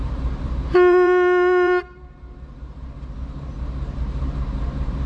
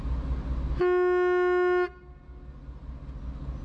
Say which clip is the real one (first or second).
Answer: second